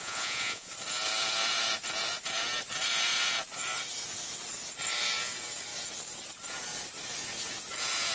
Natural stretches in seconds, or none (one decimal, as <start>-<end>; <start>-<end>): 0.7-8.1